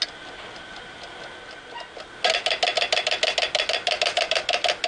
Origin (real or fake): real